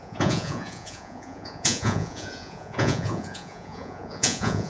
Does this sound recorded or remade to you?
remade